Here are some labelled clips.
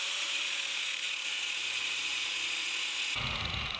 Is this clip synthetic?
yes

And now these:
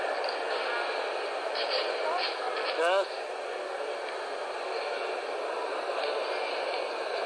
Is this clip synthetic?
no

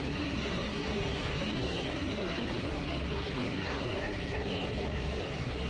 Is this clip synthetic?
yes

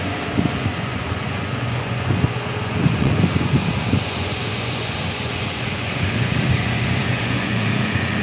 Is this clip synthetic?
yes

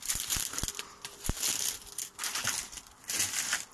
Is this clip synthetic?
no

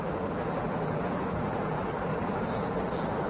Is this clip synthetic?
yes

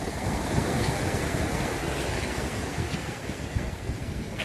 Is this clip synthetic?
yes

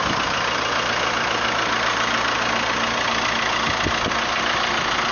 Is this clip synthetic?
no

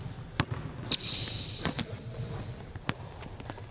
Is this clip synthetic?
no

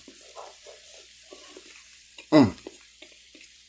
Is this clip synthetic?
yes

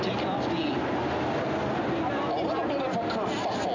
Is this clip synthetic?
no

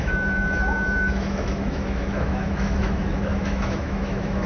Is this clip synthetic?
yes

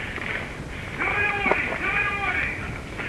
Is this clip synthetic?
no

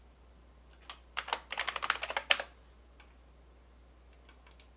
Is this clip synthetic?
no